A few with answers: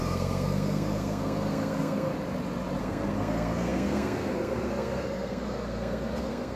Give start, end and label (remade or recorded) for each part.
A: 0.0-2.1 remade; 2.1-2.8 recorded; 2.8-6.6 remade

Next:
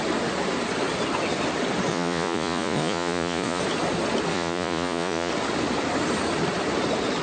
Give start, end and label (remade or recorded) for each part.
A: 0.0-1.9 recorded; 1.9-3.6 remade; 3.6-4.3 recorded; 4.3-5.3 remade; 5.3-7.2 recorded